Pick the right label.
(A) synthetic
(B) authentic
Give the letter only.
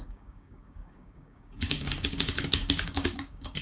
A